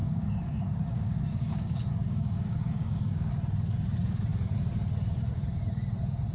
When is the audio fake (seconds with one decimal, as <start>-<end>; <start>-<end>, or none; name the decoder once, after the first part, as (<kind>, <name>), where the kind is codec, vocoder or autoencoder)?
0.0-3.3 (codec, DAC)